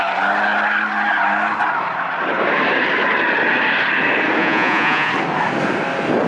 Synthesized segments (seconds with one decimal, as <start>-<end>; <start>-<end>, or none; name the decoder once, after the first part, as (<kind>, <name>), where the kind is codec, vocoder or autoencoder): 4.4-5.1 (vocoder, Vocos)